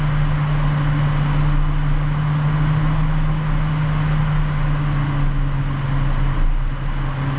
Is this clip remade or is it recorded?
recorded